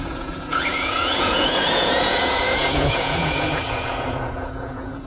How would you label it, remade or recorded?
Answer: remade